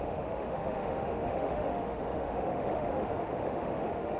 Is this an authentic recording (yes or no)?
no